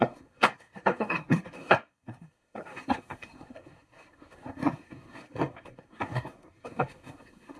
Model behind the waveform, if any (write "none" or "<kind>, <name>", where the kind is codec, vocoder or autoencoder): codec, SNAC